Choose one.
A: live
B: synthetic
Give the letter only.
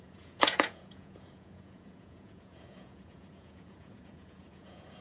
B